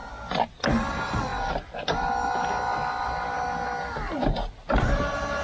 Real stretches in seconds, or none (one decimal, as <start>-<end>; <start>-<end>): 0.0-5.4